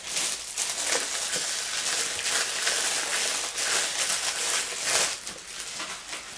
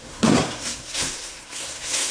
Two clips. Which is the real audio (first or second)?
first